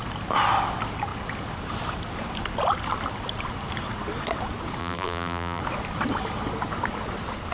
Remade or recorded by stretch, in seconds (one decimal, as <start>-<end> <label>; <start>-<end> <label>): 0.0-4.8 recorded; 4.8-5.6 remade; 5.6-7.5 recorded